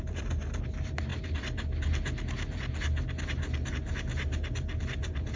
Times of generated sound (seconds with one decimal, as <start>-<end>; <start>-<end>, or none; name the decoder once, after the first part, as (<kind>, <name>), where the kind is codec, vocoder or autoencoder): none